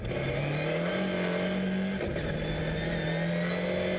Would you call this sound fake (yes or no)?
no